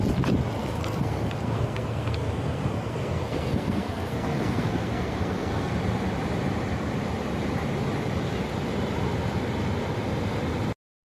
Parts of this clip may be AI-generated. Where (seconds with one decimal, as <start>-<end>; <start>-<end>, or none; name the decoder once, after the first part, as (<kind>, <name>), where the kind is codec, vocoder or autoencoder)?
0.6-5.7 (codec, SNAC)

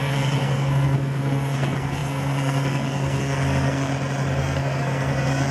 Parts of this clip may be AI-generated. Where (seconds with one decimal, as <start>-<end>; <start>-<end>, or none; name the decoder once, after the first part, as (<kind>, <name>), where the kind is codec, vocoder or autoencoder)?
0.0-3.9 (codec, SNAC); 4.4-5.5

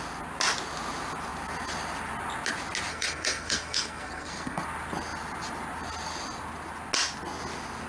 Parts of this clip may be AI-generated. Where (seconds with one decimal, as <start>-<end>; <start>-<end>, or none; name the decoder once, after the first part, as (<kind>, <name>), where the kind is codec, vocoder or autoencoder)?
2.9-4.6 (codec, SNAC)

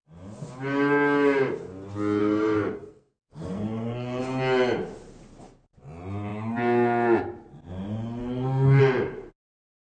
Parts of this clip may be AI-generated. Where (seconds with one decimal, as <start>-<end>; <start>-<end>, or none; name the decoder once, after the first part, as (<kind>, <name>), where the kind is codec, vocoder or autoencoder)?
2.2-4.2 (codec, SNAC); 8.2-8.8

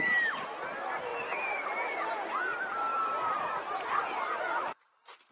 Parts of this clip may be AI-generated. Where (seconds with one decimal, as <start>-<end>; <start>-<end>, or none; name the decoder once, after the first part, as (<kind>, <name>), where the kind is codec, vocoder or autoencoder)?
none

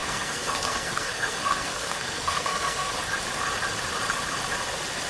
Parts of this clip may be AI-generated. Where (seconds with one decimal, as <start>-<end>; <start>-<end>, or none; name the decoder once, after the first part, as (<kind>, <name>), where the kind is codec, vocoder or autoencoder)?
0.0-2.9 (codec, SNAC)

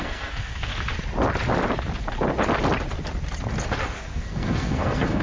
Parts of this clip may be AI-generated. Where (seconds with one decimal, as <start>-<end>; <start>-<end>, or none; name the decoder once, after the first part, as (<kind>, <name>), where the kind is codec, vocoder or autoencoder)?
0.0-0.7 (codec, SNAC); 3.8-5.2